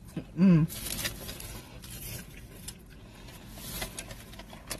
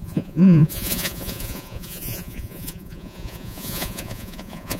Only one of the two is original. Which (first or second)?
first